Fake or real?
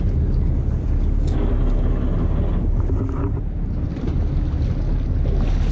real